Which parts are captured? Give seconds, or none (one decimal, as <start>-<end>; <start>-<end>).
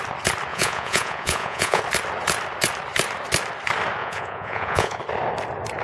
0.0-0.5; 1.8-4.0; 5.0-5.8